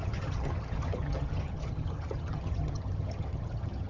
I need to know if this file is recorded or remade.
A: remade